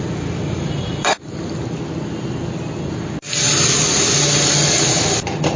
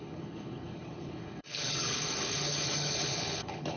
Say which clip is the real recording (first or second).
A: first